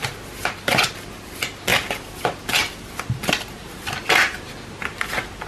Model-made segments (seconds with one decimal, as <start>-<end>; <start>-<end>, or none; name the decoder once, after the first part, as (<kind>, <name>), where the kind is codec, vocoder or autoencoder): none